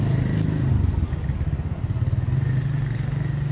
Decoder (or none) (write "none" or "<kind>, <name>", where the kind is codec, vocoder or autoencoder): none